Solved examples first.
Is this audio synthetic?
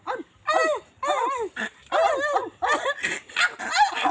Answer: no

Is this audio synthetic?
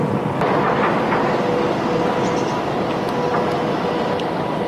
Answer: no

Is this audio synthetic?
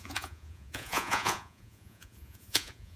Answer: yes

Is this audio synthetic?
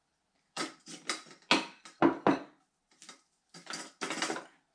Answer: no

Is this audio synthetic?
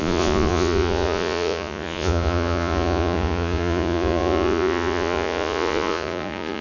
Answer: yes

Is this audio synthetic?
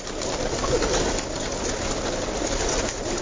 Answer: no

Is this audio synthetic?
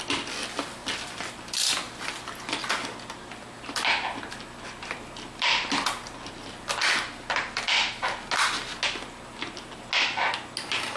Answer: no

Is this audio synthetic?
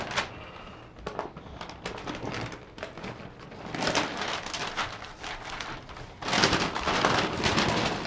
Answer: no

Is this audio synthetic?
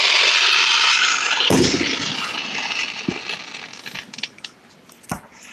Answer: no